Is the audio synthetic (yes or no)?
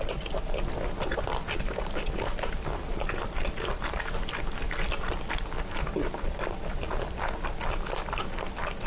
no